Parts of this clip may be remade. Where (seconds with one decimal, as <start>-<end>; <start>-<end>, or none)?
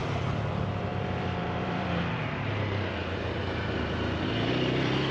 0.5-5.1